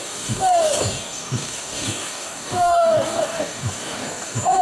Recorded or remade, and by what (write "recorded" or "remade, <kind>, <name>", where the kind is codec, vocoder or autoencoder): remade, codec, DAC